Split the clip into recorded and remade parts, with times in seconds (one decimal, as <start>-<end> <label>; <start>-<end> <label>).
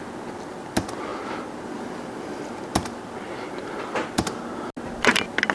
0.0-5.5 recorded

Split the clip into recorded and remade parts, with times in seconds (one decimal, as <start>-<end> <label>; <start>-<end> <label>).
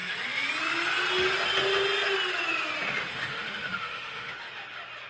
0.0-3.1 recorded; 3.1-4.3 remade; 4.3-5.1 recorded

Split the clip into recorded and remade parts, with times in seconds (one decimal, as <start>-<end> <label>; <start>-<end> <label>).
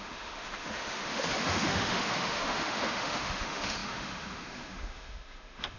0.0-5.8 remade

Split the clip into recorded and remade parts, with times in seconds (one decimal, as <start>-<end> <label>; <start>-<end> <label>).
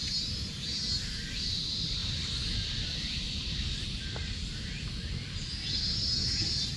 0.0-6.8 recorded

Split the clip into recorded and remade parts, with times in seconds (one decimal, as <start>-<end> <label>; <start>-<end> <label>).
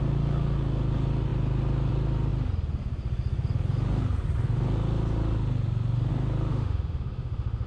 0.0-6.5 recorded; 6.5-7.7 remade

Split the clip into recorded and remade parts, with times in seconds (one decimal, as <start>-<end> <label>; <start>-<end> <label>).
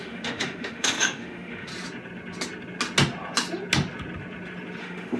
0.0-1.7 remade; 1.7-4.8 recorded; 4.8-5.2 remade